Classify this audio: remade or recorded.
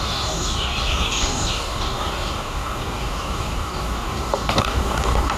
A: remade